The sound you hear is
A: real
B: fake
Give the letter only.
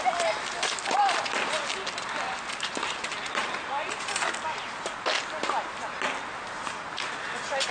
A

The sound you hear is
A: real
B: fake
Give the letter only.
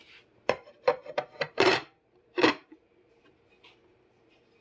B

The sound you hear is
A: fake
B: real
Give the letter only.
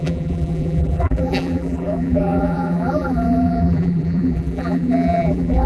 A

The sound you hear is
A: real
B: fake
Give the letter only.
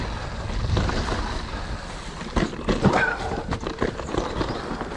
B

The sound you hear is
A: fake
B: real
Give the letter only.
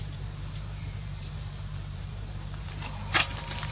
A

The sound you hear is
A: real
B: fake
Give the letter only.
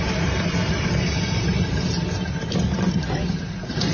B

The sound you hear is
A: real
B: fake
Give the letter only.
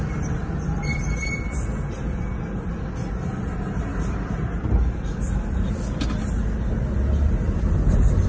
A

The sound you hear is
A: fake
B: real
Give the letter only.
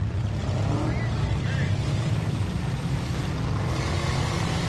B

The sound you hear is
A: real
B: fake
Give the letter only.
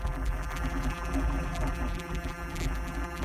B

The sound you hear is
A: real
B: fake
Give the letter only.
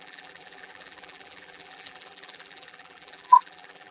B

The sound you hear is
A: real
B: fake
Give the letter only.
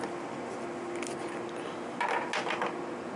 A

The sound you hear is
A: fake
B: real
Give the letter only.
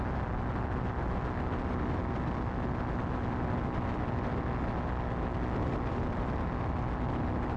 B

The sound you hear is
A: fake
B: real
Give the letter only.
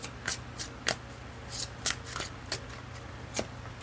B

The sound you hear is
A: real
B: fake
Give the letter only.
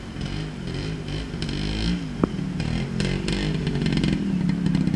A